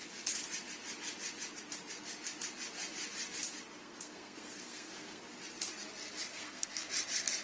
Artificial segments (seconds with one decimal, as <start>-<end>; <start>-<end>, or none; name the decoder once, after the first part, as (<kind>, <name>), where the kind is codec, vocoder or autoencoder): 3.8-5.2 (codec, SNAC); 6.3-6.9